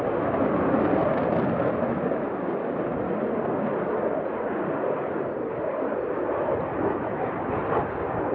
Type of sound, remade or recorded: recorded